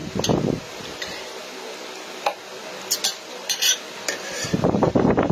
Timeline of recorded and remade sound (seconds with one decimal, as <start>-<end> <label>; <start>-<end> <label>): 0.0-0.8 recorded; 0.8-1.4 remade; 1.4-4.3 recorded; 4.3-5.3 remade